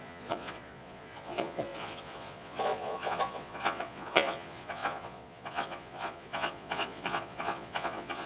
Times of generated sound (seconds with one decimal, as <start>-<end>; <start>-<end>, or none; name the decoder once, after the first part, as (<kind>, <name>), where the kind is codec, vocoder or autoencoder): 0.0-8.3 (vocoder, Vocos)